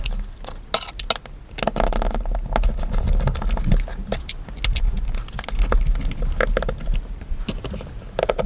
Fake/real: real